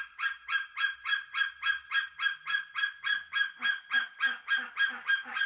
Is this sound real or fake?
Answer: real